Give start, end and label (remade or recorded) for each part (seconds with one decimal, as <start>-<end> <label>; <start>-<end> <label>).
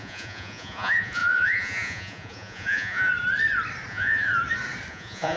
0.0-3.1 remade; 3.1-3.9 recorded; 3.9-4.3 remade; 4.3-4.9 recorded; 4.9-5.4 remade